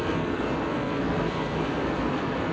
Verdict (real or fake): fake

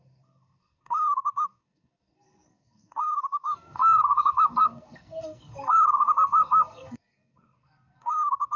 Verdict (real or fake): fake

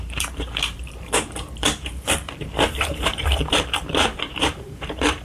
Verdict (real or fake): fake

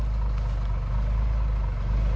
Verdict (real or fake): real